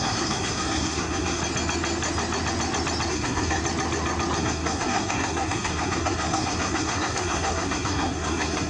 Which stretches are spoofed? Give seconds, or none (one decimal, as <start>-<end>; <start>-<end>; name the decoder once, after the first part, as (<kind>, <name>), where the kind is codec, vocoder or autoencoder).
0.0-1.4 (codec, SNAC); 3.1-3.6; 4.4-8.7